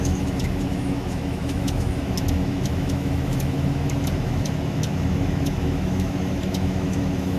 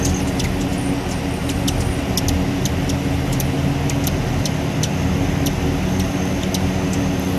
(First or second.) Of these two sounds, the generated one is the first